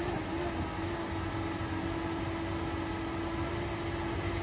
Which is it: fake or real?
real